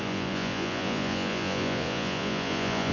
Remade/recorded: remade